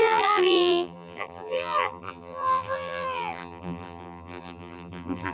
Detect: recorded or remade remade